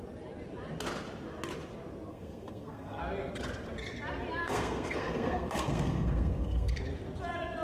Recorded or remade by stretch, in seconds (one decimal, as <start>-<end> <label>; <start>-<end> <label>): 0.0-2.1 recorded; 2.1-3.0 remade; 3.0-4.4 recorded; 4.4-6.8 remade; 6.8-7.6 recorded